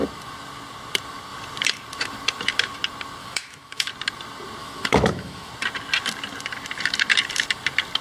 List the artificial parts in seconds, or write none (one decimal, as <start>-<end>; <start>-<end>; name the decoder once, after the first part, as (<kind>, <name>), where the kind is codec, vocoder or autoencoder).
3.2-3.9 (autoencoder, DAC-VAE); 4.6-5.5